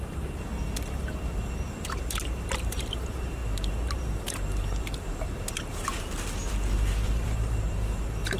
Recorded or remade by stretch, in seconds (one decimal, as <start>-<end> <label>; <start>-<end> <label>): 0.0-0.5 remade; 0.5-2.5 recorded; 2.5-8.4 remade